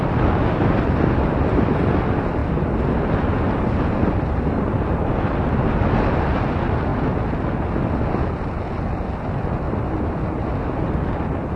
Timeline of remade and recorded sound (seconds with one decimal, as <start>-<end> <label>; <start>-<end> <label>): 0.0-11.6 recorded